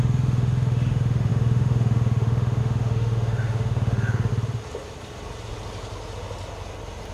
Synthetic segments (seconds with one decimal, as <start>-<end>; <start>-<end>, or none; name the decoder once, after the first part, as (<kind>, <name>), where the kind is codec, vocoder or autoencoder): 0.0-4.3 (autoencoder, DAC-VAE)